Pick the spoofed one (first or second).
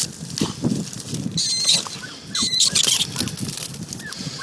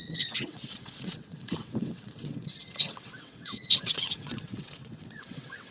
second